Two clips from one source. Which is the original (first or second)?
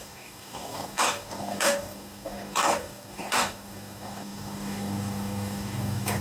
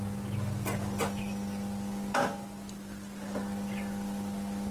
second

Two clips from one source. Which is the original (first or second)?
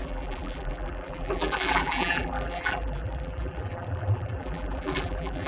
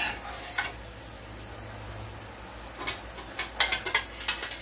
second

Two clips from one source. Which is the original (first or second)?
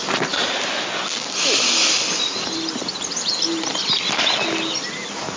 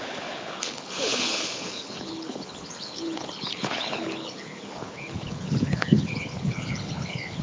first